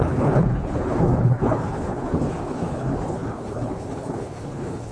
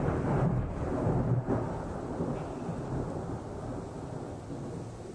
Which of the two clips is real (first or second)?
second